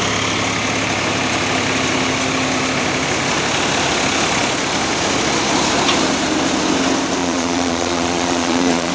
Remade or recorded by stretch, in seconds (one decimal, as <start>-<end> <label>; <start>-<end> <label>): 0.0-7.2 recorded; 7.2-8.9 remade

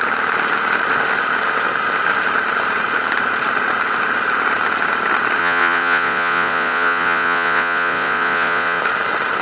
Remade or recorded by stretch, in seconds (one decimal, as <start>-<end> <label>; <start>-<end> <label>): 0.0-5.4 recorded; 5.4-8.8 remade; 8.8-9.4 recorded

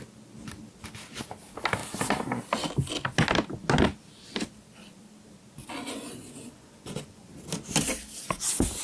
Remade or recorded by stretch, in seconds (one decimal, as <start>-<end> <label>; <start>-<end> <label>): 0.0-5.8 recorded; 5.8-7.3 remade; 7.3-8.8 recorded

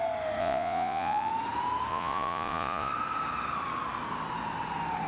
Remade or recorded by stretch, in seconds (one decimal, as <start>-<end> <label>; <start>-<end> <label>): 0.0-0.4 recorded; 0.4-1.3 remade; 1.3-1.9 recorded; 1.9-2.9 remade; 2.9-5.1 recorded

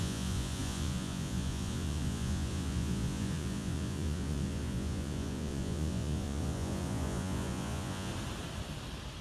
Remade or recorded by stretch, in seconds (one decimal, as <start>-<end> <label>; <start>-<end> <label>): 0.0-8.1 remade; 8.1-9.2 recorded

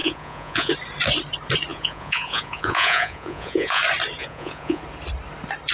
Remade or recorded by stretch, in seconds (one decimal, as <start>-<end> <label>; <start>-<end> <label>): 0.0-0.7 remade; 0.7-1.7 recorded; 1.7-3.8 remade; 3.8-4.2 recorded; 4.2-4.8 remade; 4.8-5.7 recorded

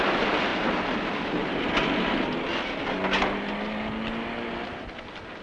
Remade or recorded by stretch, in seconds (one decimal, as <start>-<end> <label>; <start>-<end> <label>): 0.0-5.4 recorded

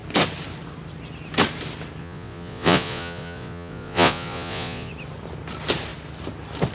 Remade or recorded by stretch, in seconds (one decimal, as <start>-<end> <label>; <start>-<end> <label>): 0.0-2.0 recorded; 2.0-4.9 remade; 4.9-6.7 recorded